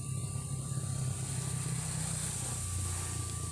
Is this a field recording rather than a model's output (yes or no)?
yes